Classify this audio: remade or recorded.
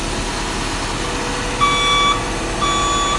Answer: recorded